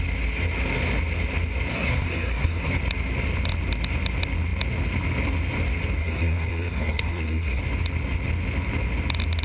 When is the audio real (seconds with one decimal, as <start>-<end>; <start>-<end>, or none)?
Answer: 0.0-1.7; 2.7-6.0; 7.6-9.4